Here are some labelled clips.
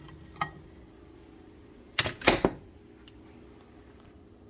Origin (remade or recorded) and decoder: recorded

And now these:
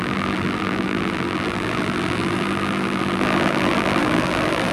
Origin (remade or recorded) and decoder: remade, vocoder, BigVGAN v2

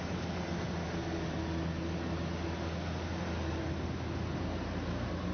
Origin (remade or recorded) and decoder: recorded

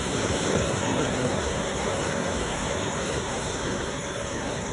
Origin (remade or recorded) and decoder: remade, codec, SNAC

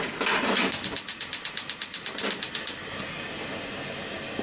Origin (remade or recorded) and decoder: recorded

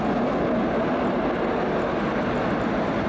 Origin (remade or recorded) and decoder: recorded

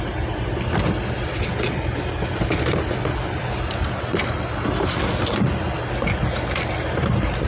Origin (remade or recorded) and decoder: recorded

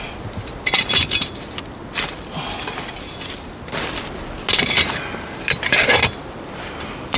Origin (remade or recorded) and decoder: recorded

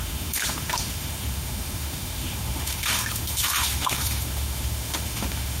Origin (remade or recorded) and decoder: remade, autoencoder, DAC-VAE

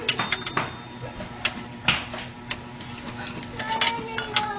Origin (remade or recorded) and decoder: recorded